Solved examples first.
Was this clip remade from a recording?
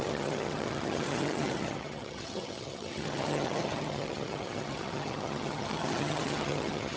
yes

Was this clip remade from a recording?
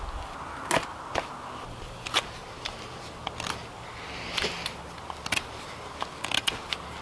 no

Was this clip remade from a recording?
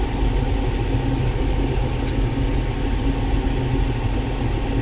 no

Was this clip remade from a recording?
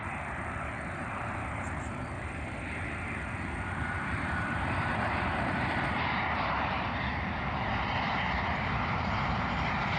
yes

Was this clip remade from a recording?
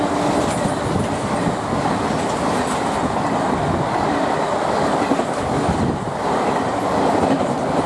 no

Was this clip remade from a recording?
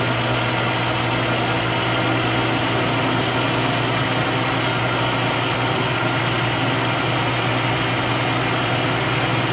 no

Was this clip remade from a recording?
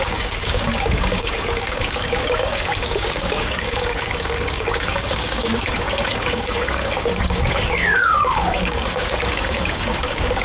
yes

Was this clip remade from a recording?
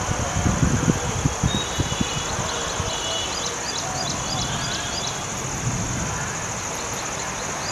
no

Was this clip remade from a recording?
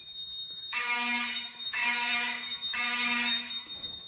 yes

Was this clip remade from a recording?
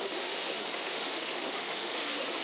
yes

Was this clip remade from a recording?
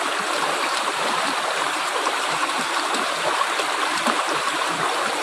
yes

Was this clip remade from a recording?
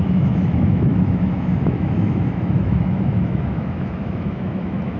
yes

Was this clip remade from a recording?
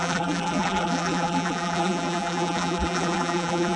yes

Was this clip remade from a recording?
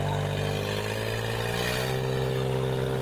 no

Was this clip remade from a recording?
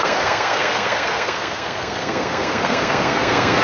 yes